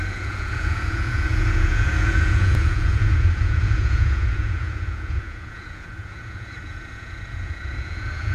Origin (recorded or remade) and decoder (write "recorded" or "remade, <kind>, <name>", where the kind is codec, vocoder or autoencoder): remade, vocoder, Vocos